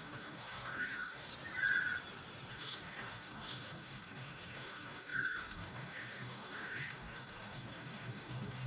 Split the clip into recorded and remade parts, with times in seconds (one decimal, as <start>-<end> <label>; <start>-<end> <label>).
0.0-1.3 remade; 1.3-2.5 recorded; 2.5-8.7 remade